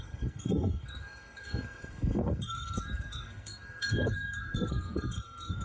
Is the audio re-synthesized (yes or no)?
yes